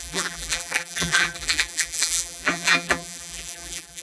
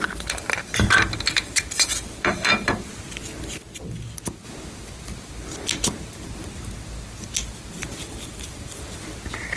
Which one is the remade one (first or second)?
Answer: first